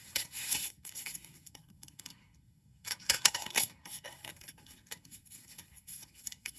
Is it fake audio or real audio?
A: fake